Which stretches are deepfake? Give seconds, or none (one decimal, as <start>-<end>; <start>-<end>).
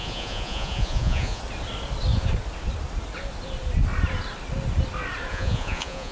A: 0.0-1.4; 5.3-6.1